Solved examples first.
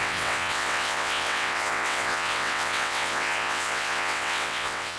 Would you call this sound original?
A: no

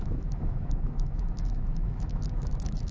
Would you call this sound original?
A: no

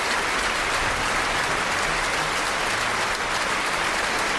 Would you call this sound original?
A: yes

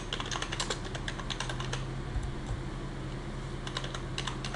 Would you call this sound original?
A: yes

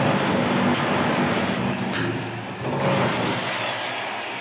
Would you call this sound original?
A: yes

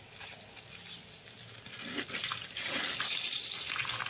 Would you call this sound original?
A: yes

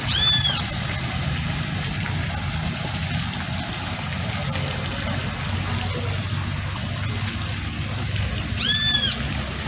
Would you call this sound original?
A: yes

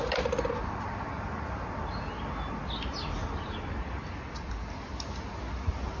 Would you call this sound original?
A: yes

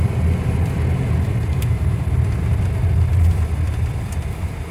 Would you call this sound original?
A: yes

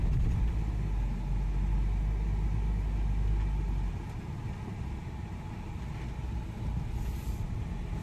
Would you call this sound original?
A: yes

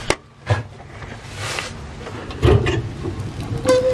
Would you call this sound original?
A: yes